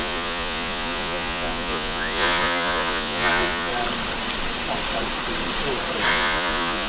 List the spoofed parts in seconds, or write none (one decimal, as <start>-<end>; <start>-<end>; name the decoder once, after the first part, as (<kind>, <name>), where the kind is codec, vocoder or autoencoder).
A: 0.0-3.7 (vocoder, Vocos); 6.1-6.9